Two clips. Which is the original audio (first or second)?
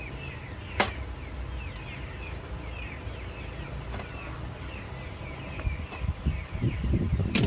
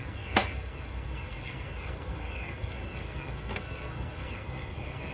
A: first